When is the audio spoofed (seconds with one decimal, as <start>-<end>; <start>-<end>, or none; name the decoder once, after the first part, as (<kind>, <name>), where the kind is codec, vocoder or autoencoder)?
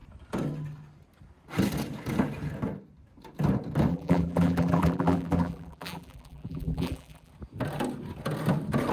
3.9-7.3 (vocoder, BigVGAN v2)